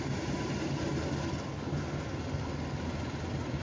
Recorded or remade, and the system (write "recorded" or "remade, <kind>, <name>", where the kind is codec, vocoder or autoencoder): recorded